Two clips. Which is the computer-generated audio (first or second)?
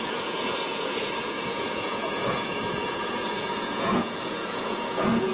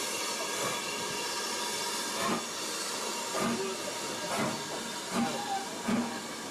first